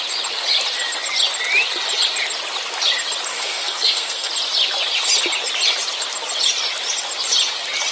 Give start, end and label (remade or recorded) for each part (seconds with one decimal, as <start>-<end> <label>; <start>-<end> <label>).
0.0-3.3 recorded; 3.3-4.3 remade; 4.3-7.9 recorded